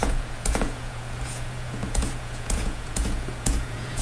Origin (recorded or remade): remade